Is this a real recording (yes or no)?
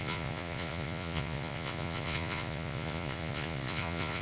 no